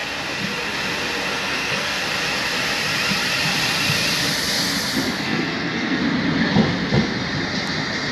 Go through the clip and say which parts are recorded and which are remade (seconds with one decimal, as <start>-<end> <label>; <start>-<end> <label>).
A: 0.0-1.3 recorded; 1.3-2.0 remade; 2.0-5.2 recorded; 5.2-6.0 remade; 6.0-8.1 recorded